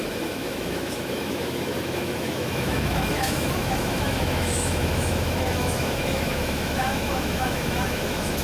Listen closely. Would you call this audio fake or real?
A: fake